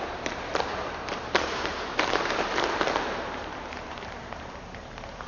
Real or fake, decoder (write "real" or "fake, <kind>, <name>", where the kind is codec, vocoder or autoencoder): fake, vocoder, BigVGAN v2